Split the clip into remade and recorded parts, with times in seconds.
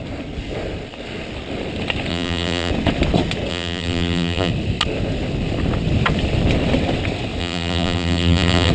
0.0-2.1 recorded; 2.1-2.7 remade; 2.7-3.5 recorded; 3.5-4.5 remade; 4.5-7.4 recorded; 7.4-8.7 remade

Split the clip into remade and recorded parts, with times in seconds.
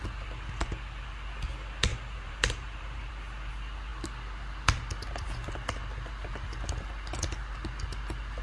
0.0-1.9 recorded; 1.9-3.1 remade; 3.1-8.4 recorded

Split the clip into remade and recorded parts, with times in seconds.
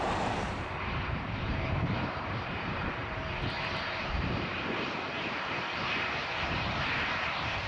0.0-3.2 remade; 3.2-4.0 recorded; 4.0-7.7 remade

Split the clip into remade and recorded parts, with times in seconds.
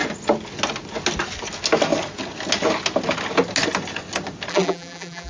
0.0-4.5 recorded; 4.5-5.3 remade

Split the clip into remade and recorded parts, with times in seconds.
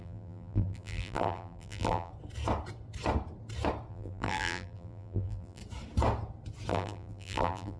0.0-2.1 remade; 2.1-3.9 recorded; 3.9-5.6 remade; 5.6-6.7 recorded; 6.7-7.8 remade